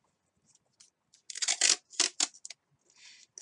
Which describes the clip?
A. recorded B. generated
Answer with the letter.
A